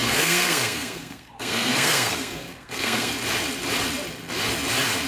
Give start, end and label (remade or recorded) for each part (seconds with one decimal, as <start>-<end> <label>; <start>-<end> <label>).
0.0-3.1 remade; 3.1-5.1 recorded